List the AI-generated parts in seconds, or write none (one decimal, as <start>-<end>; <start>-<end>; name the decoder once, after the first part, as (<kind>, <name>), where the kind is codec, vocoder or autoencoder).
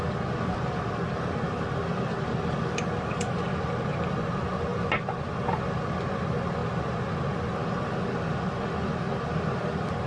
none